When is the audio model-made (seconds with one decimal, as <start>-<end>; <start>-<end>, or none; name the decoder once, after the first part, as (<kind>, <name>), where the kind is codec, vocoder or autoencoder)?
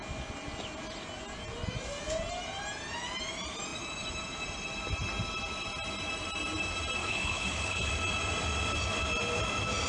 7.0-7.9 (codec, HILCodec)